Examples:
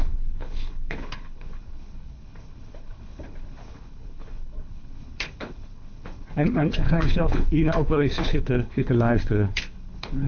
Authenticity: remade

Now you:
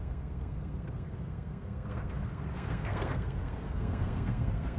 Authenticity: remade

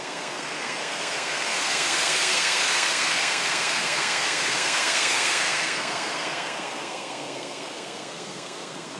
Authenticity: remade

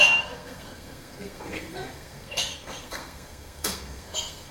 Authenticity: remade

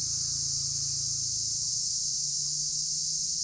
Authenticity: recorded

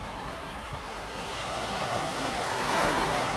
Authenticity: remade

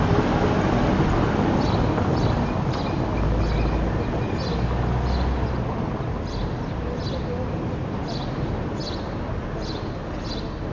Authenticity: recorded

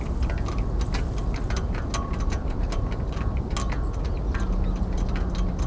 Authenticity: recorded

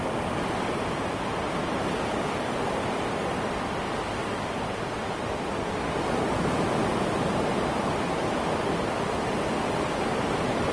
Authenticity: recorded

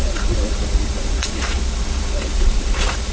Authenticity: remade